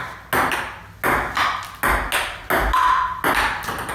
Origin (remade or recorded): recorded